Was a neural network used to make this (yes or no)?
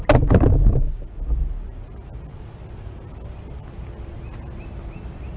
no